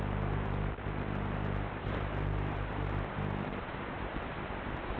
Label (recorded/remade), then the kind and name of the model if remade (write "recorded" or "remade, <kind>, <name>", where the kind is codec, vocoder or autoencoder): remade, vocoder, BigVGAN v2